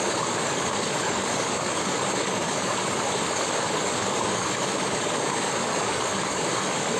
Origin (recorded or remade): remade